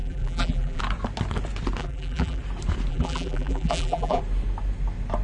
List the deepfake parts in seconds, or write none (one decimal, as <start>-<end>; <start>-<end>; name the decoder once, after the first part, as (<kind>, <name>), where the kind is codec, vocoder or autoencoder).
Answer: 0.0-0.8 (vocoder, BigVGAN v2); 1.8-2.4; 2.9-4.2